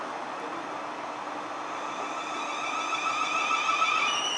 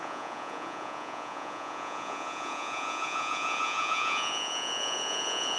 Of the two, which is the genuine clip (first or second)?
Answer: first